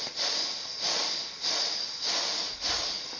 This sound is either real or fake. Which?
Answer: real